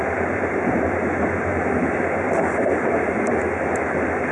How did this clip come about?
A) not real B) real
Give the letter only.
A